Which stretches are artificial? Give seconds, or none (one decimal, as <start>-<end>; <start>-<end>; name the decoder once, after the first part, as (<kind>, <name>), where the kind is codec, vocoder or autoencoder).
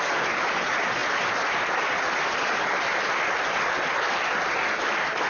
none